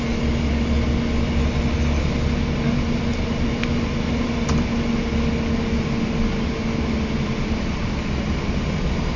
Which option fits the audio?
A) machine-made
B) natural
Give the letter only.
B